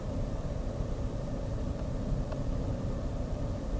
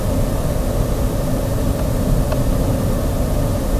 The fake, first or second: first